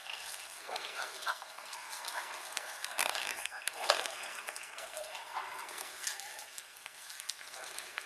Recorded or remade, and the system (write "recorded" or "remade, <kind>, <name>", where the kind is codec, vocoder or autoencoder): remade, codec, SNAC